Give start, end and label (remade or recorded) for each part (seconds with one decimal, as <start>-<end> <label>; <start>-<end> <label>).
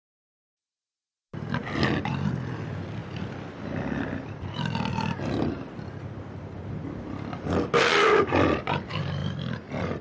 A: 0.0-10.0 recorded